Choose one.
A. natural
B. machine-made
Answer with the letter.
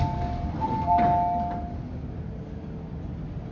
A